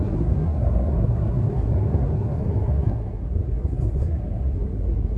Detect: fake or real fake